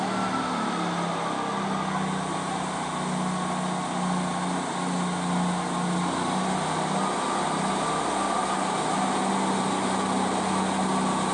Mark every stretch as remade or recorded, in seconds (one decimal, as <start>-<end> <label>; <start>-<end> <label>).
0.0-11.3 recorded